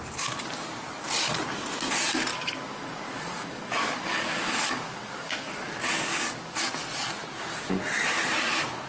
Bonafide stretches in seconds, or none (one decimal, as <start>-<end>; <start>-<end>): 0.0-2.3; 6.7-8.9